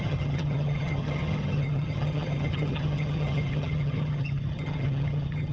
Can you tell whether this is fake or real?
fake